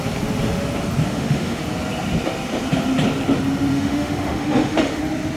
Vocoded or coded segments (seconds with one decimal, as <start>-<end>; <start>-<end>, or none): 1.1-1.6; 3.7-5.0